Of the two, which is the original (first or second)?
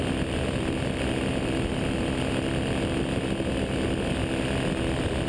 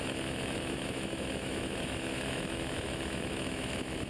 first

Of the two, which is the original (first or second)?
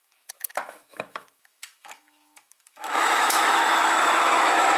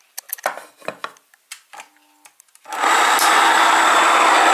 second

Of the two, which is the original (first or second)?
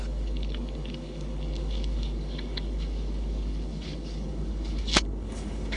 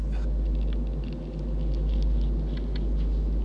second